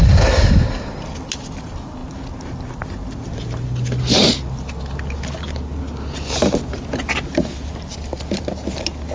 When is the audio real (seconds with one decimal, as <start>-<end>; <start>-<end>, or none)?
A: 0.0-9.1